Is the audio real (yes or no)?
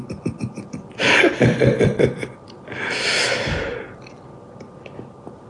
yes